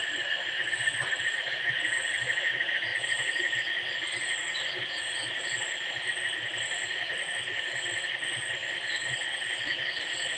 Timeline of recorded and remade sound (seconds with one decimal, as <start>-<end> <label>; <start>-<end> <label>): 0.0-10.4 recorded